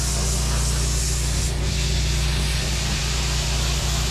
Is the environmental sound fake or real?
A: real